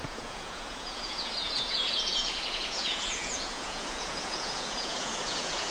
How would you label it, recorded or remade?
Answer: remade